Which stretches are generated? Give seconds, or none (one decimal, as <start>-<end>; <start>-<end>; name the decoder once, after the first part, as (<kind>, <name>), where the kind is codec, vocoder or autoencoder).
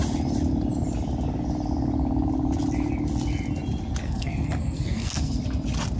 4.0-5.4 (codec, SNAC)